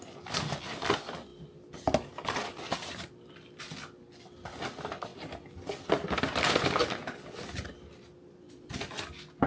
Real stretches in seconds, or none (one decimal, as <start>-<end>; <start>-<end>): 0.0-9.5